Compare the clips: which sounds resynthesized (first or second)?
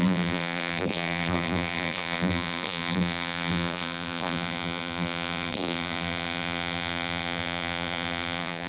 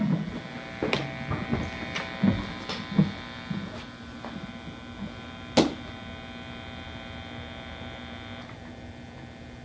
first